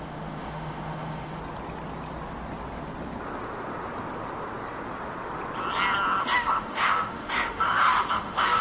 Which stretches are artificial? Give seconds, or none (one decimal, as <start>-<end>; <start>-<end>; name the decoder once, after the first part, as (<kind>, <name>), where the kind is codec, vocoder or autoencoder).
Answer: 0.0-1.4 (autoencoder, DAC-VAE); 6.2-8.6